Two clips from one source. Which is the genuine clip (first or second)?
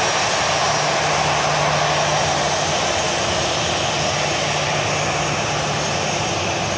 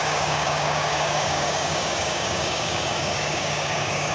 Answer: first